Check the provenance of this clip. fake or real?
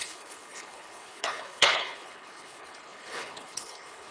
fake